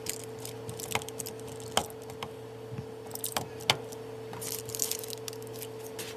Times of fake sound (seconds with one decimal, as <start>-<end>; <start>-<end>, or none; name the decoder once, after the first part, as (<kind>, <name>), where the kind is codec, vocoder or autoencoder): none